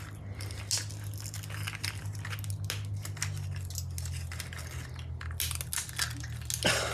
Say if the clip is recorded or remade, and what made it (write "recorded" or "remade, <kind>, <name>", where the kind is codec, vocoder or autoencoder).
recorded